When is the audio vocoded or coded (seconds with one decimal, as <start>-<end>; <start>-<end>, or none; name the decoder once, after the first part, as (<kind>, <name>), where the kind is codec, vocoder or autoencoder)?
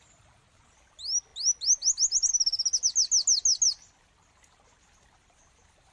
none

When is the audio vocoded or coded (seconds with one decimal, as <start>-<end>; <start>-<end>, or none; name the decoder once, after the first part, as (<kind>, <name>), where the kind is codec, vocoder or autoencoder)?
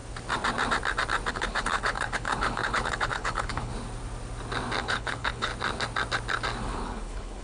1.3-3.7 (codec, HILCodec); 4.8-5.5; 6.6-7.4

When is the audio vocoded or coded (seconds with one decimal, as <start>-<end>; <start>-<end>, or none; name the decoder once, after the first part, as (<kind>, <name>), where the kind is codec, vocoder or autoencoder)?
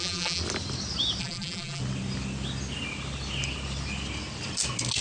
0.0-0.4 (vocoder, BigVGAN v2); 1.2-1.8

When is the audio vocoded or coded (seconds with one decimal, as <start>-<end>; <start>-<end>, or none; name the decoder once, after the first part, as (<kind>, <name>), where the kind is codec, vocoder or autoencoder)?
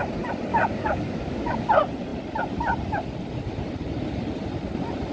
0.5-1.7 (codec, DAC)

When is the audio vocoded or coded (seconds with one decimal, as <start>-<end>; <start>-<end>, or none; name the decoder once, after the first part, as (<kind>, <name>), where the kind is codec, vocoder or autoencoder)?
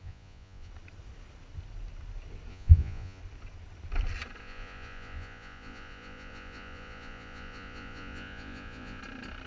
0.0-0.7 (vocoder, Vocos); 2.5-3.2; 4.4-9.0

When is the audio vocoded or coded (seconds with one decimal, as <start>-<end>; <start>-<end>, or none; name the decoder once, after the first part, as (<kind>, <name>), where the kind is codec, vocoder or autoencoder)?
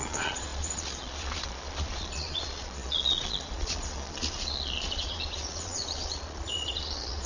0.0-7.3 (vocoder, Vocos)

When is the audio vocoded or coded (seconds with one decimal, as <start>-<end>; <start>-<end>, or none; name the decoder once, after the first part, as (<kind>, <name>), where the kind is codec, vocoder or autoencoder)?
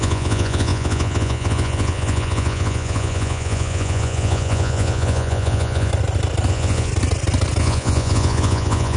0.0-5.9 (vocoder, Vocos); 6.5-6.9; 7.6-9.0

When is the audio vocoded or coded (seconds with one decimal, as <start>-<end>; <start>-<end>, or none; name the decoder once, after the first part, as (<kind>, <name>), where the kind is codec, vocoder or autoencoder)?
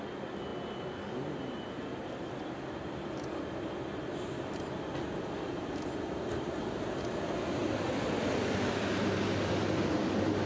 none